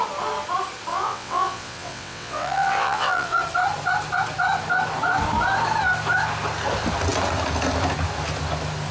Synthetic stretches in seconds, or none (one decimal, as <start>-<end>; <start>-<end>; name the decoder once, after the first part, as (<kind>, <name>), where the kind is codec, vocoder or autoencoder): 0.9-3.4 (vocoder, WaveNeXt)